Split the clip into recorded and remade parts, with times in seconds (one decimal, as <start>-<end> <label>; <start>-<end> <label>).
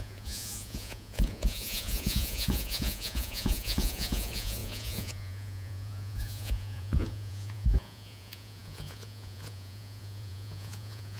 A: 0.0-11.2 remade